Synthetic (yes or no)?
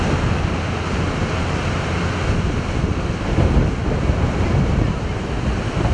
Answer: no